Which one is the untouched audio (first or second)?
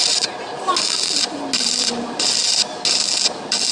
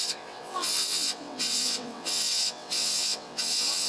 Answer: first